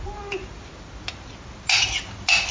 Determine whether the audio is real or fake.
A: real